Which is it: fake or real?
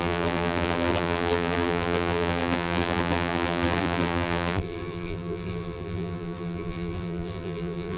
fake